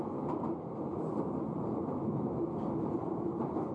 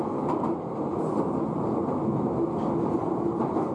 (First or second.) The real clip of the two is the second